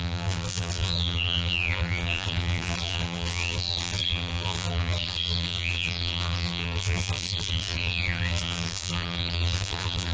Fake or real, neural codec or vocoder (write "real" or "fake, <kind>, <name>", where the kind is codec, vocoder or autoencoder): fake, vocoder, BigVGAN v2